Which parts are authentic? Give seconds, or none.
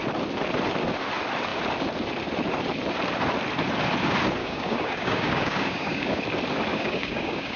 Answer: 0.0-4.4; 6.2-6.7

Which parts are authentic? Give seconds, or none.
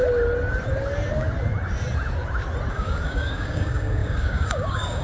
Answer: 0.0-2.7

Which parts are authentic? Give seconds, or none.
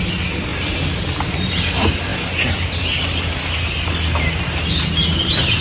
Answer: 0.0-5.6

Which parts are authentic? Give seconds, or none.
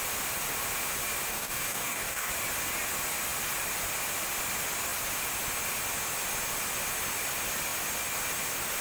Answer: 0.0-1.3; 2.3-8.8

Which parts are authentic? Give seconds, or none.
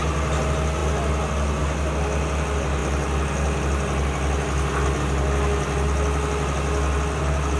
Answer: 0.0-7.6